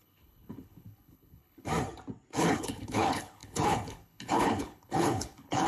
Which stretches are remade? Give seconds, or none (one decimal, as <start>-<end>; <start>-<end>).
0.0-1.7; 2.4-5.7